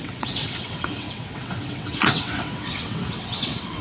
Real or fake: fake